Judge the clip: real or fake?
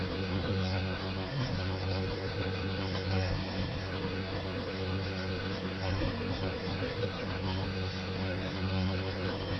fake